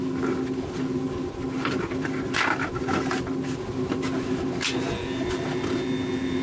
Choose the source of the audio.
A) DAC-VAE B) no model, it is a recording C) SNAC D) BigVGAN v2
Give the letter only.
B